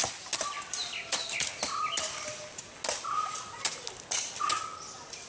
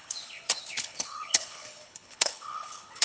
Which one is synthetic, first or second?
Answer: second